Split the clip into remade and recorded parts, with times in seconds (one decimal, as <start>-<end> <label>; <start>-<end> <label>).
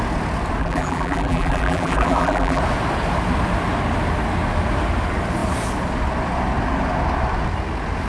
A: 0.0-0.6 recorded; 0.6-2.6 remade; 2.6-8.1 recorded